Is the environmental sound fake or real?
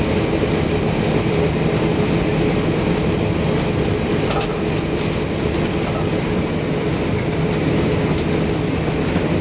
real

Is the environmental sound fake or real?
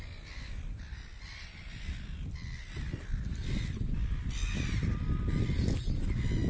real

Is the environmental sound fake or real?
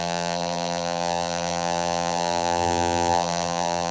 fake